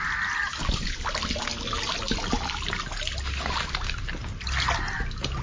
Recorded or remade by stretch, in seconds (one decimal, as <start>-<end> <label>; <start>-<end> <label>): 0.0-5.4 recorded